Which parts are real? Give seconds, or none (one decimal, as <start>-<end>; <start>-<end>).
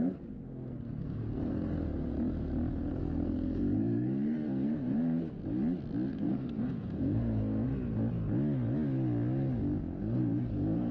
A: 2.1-2.9; 5.4-6.1; 7.7-10.0